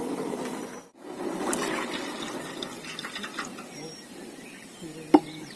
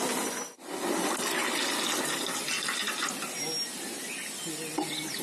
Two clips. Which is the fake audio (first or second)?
first